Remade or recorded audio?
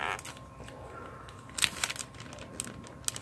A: recorded